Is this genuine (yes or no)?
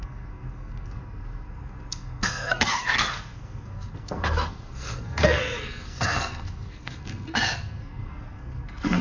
no